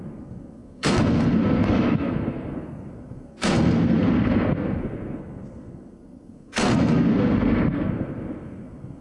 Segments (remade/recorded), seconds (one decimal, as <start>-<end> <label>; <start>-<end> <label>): 0.0-9.0 remade

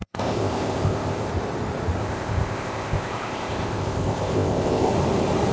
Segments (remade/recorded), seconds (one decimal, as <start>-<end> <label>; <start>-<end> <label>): 0.0-1.3 remade; 1.3-2.0 recorded; 2.0-4.9 remade; 4.9-5.5 recorded

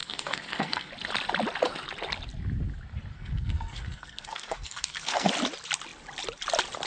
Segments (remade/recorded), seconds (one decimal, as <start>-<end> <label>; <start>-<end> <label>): 0.0-0.9 remade; 0.9-3.1 recorded; 3.1-5.3 remade; 5.3-6.9 recorded

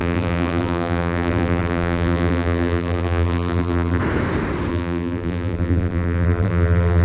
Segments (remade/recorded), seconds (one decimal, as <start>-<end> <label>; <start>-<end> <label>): 0.0-4.0 remade; 4.0-4.7 recorded; 4.7-7.0 remade

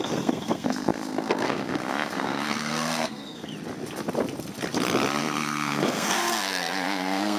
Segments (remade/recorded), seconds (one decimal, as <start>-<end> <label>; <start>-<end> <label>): 0.0-3.5 remade; 3.5-5.2 recorded; 5.2-7.4 remade

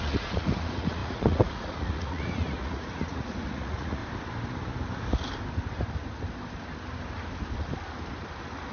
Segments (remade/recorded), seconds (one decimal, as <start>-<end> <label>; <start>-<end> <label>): 0.0-4.0 remade; 4.0-8.7 recorded

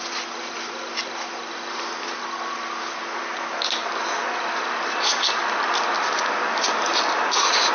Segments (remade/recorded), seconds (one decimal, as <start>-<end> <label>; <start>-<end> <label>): 0.0-7.7 recorded